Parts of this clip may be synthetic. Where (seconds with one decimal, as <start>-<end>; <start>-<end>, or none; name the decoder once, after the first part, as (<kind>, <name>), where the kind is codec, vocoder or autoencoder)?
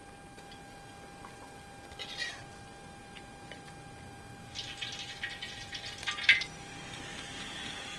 none